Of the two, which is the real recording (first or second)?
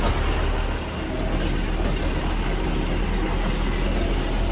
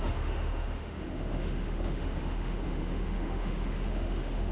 first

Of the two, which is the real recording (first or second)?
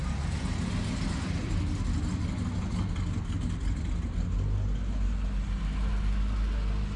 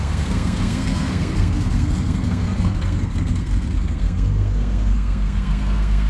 first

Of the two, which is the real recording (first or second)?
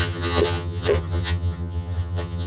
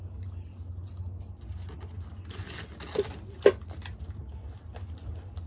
second